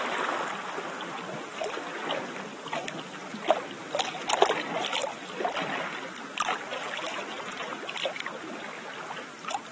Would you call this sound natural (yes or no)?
yes